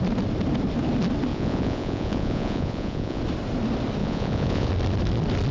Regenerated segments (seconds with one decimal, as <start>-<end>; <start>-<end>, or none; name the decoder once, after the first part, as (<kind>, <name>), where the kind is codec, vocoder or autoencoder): 1.3-3.2 (vocoder, Vocos); 4.0-4.7